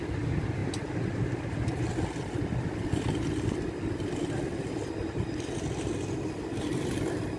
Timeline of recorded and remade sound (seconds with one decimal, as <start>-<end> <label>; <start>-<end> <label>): 0.0-7.4 recorded